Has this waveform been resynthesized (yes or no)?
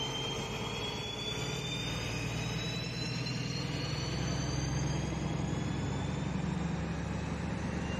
no